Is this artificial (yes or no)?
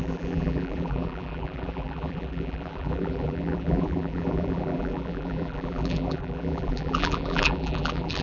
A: yes